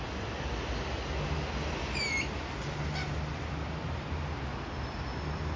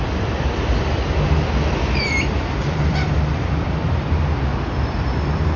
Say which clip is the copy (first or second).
second